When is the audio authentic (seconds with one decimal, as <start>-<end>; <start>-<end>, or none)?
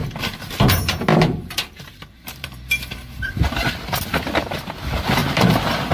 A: 0.0-1.1; 3.3-5.2